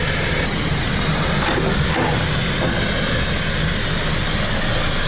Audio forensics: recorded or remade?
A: recorded